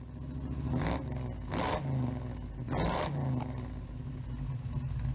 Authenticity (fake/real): real